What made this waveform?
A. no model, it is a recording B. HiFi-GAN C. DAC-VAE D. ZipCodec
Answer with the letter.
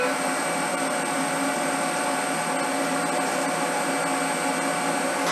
A